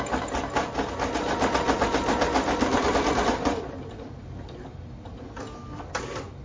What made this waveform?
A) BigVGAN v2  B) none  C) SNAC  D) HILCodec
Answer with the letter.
B